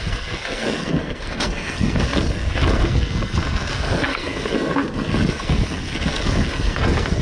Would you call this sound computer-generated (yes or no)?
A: yes